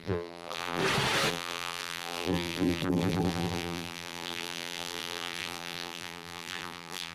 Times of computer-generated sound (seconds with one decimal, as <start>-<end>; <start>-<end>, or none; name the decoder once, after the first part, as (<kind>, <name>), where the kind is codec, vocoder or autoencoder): 0.0-0.8 (vocoder, BigVGAN v2); 1.3-7.1